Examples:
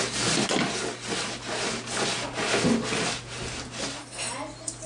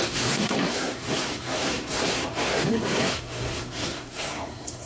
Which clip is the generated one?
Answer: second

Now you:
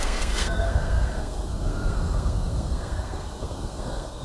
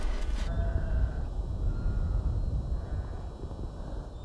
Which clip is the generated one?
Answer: first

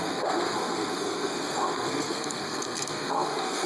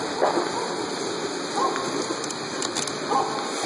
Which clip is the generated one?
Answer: first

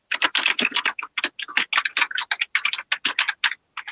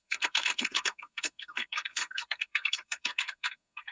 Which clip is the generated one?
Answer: second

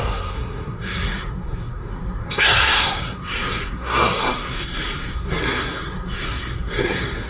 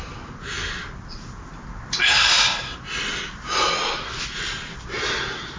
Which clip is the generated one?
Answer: first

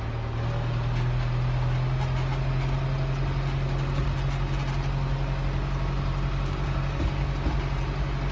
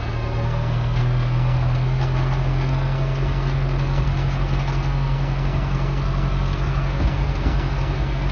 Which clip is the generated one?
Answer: second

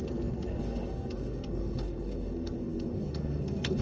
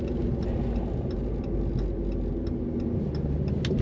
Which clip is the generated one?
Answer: first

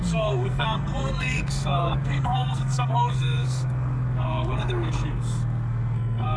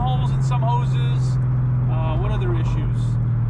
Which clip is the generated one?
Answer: first